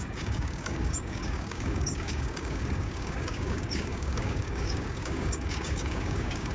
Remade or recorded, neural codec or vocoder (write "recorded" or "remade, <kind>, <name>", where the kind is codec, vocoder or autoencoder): remade, codec, DAC